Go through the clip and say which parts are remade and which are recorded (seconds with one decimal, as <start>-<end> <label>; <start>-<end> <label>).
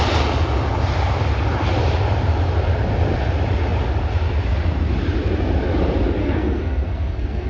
0.0-6.2 recorded; 6.2-7.5 remade